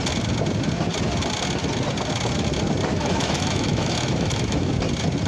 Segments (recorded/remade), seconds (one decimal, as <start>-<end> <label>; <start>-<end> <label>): 0.0-2.9 recorded; 2.9-4.7 remade; 4.7-5.3 recorded